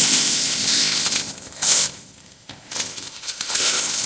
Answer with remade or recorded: remade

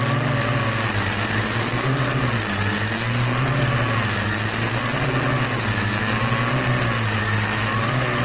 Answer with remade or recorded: recorded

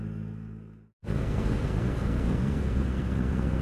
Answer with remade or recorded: remade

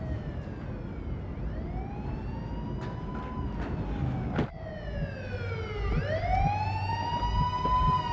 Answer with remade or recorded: recorded